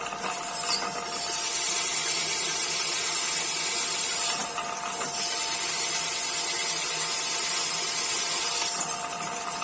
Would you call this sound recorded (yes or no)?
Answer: yes